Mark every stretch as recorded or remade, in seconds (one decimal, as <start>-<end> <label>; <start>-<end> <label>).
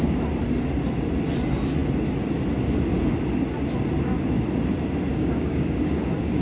0.0-5.1 recorded; 5.1-6.4 remade